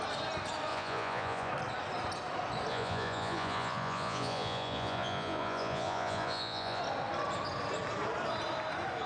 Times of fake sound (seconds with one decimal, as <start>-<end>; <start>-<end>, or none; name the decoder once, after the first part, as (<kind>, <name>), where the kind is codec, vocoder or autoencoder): 0.7-1.5 (vocoder, Vocos); 2.7-6.8

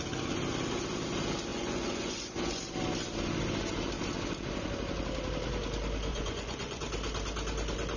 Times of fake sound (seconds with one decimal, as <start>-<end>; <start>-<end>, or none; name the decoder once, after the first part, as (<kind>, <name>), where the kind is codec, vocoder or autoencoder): 1.5-2.6 (vocoder, Vocos); 6.1-6.8

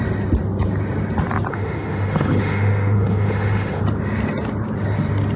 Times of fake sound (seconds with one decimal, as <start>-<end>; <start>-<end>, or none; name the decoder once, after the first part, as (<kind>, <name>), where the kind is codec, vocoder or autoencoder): 1.5-3.8 (autoencoder, DAC-VAE)